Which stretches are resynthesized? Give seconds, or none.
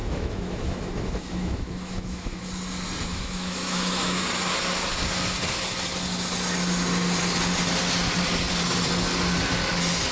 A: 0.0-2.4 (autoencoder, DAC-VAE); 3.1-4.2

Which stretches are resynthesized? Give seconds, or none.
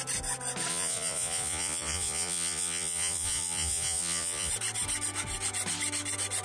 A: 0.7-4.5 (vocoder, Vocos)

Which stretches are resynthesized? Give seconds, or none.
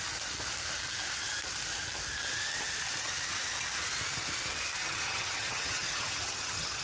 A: 4.8-6.8 (vocoder, HiFi-GAN)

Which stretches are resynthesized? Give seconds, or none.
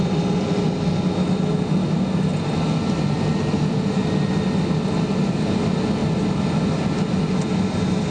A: none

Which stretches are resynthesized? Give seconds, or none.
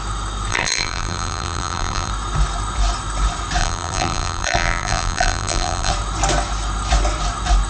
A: 0.5-2.1 (vocoder, BigVGAN v2); 3.6-5.9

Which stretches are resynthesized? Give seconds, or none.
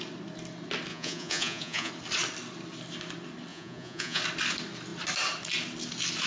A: 0.9-1.9 (vocoder, Vocos); 3.5-4.2